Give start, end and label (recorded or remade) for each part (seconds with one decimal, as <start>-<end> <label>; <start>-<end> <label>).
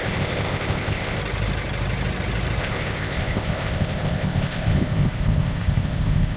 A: 0.0-1.2 remade; 1.2-2.6 recorded; 2.6-6.4 remade